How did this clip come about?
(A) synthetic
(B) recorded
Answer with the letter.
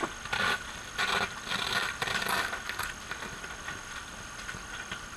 B